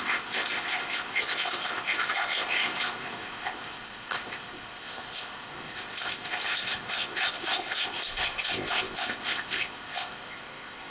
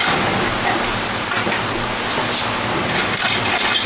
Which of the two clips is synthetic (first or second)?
first